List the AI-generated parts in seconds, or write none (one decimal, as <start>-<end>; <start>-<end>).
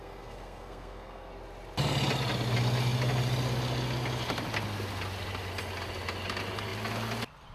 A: 0.0-1.3